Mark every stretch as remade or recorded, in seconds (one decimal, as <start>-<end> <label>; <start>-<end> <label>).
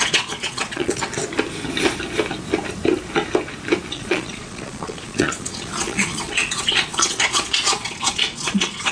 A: 0.0-1.0 remade; 1.0-3.9 recorded; 3.9-8.9 remade